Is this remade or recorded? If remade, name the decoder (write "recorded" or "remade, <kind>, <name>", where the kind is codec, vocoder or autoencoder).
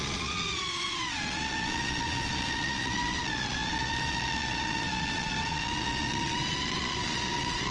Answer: remade, vocoder, Vocos